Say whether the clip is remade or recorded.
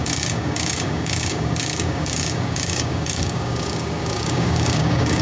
remade